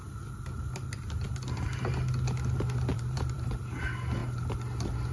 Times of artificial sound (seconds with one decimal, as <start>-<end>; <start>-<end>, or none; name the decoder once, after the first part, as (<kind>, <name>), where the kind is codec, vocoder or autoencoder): 2.9-3.8 (vocoder, BigVGAN v2)